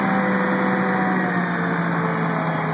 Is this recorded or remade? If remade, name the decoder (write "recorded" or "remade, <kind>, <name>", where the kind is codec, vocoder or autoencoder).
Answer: recorded